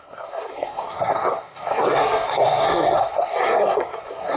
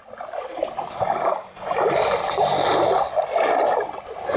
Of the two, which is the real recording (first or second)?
second